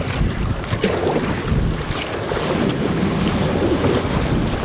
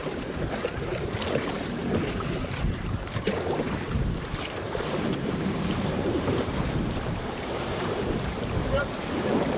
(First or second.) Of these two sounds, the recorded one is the first